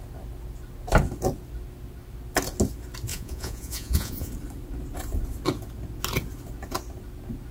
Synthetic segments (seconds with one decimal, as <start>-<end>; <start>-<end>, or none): 3.1-4.3